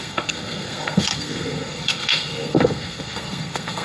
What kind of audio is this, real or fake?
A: fake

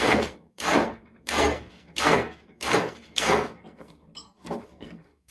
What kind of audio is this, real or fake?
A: fake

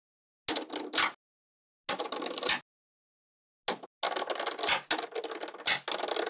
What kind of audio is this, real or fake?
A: real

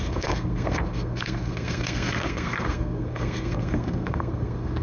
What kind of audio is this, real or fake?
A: fake